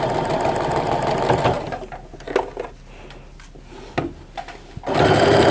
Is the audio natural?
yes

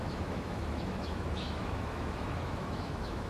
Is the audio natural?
no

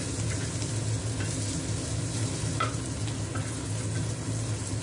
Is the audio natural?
yes